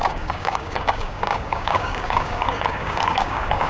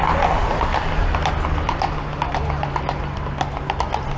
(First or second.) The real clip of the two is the second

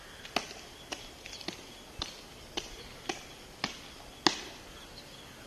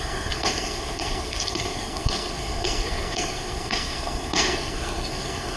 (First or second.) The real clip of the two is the first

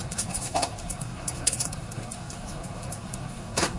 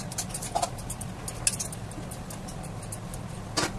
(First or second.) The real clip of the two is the second